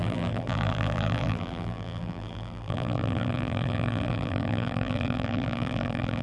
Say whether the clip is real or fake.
fake